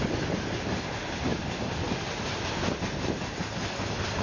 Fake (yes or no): no